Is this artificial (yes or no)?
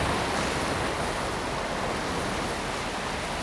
no